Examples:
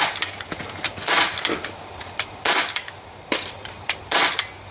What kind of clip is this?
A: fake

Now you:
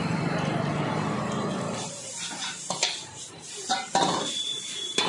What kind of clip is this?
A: fake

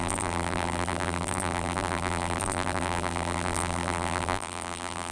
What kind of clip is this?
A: fake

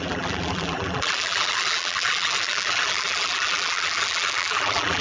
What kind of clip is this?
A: fake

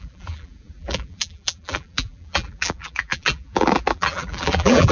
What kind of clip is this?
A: fake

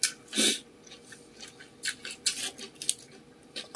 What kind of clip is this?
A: real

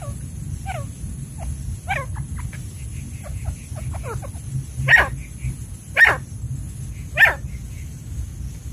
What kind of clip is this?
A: real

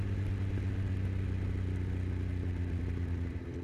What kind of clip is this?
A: real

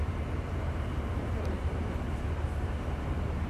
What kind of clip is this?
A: fake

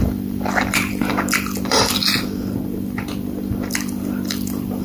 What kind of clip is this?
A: fake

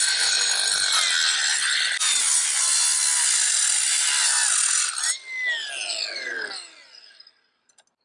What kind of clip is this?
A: real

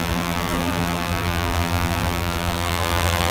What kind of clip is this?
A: fake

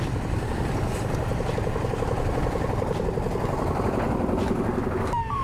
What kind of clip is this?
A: fake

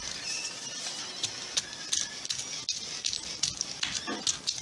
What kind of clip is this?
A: real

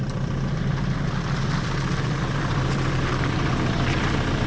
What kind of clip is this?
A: fake